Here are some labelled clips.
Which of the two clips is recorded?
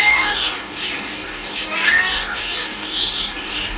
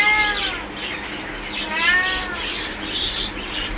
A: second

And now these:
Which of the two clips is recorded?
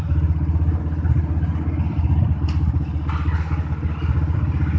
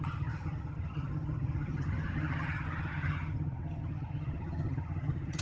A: first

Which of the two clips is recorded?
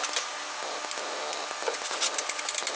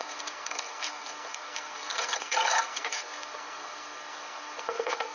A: first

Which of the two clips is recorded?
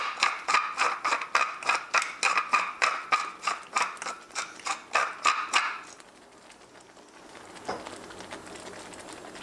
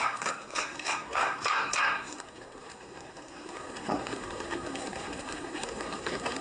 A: first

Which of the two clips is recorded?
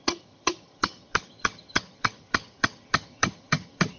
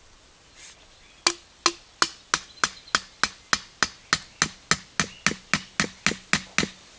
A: second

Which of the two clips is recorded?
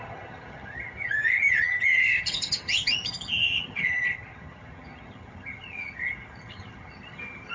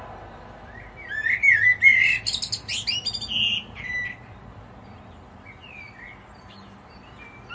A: second